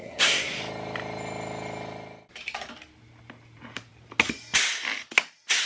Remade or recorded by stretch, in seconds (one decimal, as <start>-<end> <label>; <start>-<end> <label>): 0.0-0.6 remade; 0.6-5.7 recorded